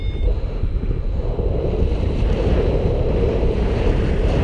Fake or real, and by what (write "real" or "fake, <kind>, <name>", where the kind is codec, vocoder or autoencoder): fake, vocoder, BigVGAN v2